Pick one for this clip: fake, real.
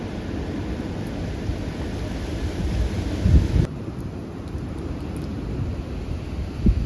real